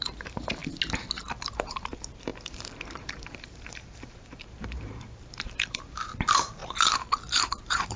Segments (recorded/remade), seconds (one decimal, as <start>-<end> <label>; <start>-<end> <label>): 0.0-0.6 remade; 0.6-1.5 recorded; 1.5-6.6 remade; 6.6-7.5 recorded; 7.5-8.0 remade